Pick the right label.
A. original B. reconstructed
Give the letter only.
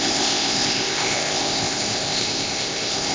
B